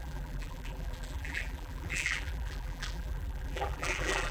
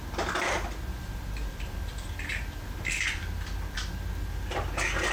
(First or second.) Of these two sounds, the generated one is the first